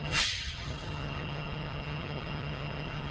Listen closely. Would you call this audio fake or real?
fake